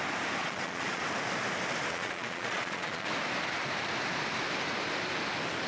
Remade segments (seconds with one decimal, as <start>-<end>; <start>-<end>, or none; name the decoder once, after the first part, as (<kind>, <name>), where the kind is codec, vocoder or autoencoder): 0.4-1.0 (vocoder, Vocos); 1.9-3.1